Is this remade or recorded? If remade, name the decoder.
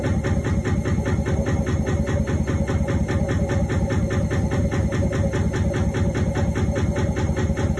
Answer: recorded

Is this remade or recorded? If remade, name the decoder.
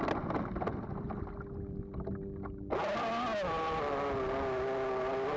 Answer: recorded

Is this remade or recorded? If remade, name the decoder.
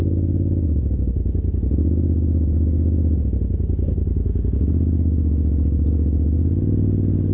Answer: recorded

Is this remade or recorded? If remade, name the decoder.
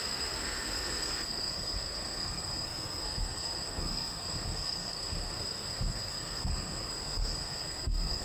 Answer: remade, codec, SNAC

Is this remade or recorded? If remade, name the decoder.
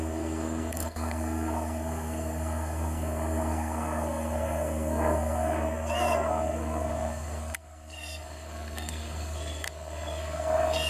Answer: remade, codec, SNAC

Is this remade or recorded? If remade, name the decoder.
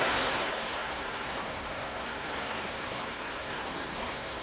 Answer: remade, codec, SNAC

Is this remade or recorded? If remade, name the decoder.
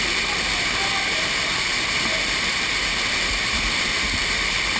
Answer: recorded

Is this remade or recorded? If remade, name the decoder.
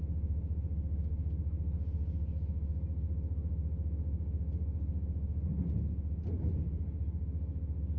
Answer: recorded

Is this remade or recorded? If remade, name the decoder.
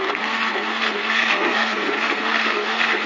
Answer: remade, codec, SNAC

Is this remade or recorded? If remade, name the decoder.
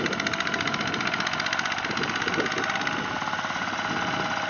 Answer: recorded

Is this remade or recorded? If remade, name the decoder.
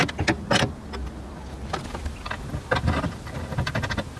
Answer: recorded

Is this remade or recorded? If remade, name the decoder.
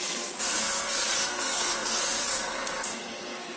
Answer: remade, codec, SNAC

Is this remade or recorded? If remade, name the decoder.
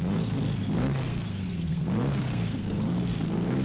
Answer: remade, codec, SNAC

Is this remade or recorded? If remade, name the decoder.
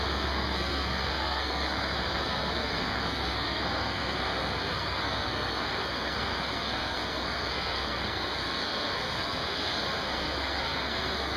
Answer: remade, codec, SNAC